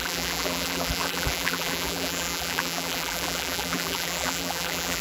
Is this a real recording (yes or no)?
no